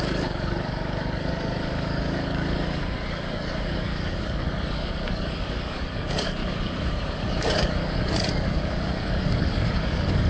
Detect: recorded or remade remade